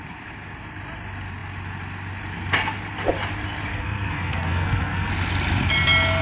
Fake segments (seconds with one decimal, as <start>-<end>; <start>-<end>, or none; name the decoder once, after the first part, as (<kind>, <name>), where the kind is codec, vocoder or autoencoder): 3.7-5.1 (codec, SNAC)